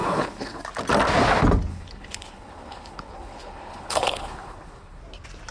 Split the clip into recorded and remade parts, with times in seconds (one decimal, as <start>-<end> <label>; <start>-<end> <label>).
0.0-0.6 remade; 0.6-1.7 recorded; 1.7-5.0 remade; 5.0-5.5 recorded